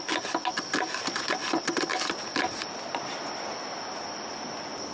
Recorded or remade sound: recorded